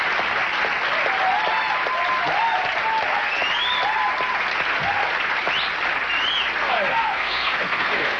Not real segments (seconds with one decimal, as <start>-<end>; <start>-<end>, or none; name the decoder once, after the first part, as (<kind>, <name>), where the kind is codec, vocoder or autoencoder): 6.6-8.2 (codec, SNAC)